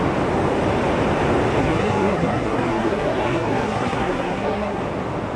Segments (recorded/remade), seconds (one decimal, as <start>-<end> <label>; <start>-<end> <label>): 0.0-1.6 recorded; 1.6-4.8 remade; 4.8-5.4 recorded